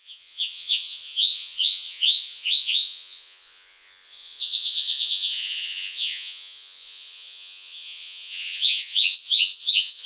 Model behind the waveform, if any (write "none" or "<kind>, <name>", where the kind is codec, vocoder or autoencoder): vocoder, Vocos